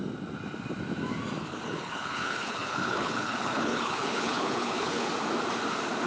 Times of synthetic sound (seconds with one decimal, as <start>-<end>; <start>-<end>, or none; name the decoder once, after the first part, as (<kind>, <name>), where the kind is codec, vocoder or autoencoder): 1.4-5.1 (codec, HILCodec)